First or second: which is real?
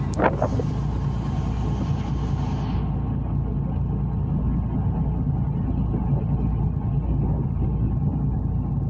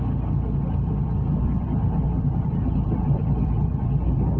first